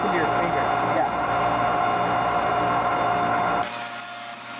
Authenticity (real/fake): real